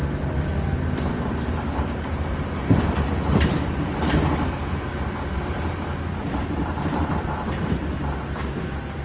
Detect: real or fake real